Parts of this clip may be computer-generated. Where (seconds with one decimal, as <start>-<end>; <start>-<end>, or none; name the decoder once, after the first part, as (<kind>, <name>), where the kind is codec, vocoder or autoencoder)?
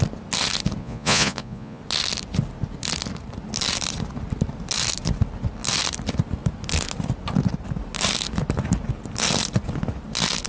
0.8-1.8 (vocoder, Vocos)